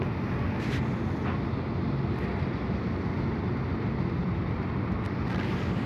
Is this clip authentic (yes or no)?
yes